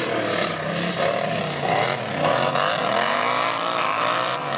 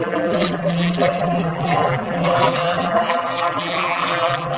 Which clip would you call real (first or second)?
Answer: first